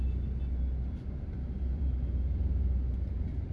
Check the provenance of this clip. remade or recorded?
recorded